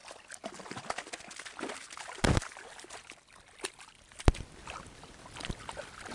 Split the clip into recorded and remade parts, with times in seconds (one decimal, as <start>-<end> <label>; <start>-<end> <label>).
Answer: 0.0-6.1 recorded